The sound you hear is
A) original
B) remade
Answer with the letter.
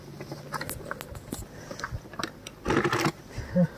A